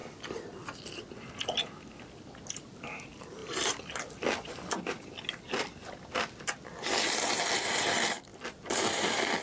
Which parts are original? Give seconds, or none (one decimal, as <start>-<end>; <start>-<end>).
0.0-1.9